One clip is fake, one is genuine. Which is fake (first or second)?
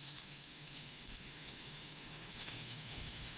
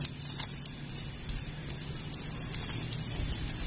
first